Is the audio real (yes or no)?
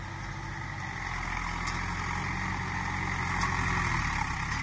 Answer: yes